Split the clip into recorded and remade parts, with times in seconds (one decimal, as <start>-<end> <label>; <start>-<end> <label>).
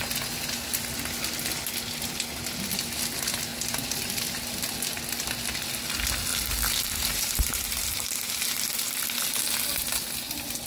0.0-6.3 recorded; 6.3-8.1 remade; 8.1-10.7 recorded